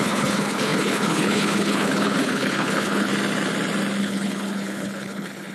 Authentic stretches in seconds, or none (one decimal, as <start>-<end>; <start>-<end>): 3.1-4.0